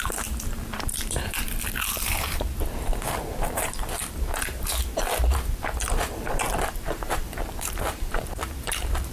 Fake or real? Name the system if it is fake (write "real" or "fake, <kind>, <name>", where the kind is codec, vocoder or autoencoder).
fake, vocoder, BigVGAN v2